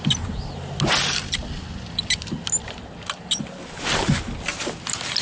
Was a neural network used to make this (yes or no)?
no